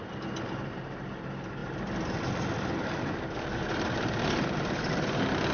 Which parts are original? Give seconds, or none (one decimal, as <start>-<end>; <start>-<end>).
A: 0.0-1.6; 4.9-5.5